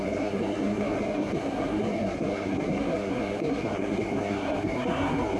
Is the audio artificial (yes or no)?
yes